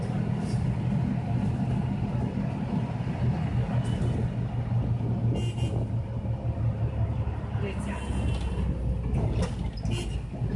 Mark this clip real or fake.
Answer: real